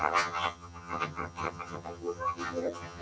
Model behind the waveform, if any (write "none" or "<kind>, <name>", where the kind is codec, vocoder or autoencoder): vocoder, HiFi-GAN